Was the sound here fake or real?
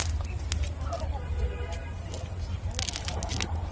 real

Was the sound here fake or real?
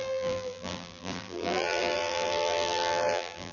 fake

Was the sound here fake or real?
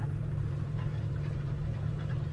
fake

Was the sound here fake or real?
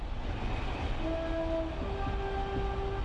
real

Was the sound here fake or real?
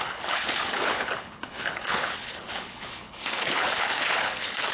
fake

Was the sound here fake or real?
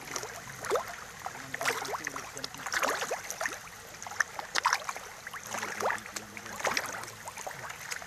real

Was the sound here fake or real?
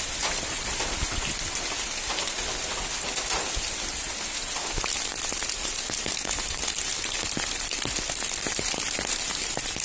real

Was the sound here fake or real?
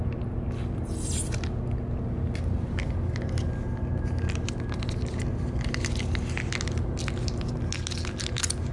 real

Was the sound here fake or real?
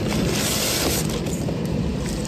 real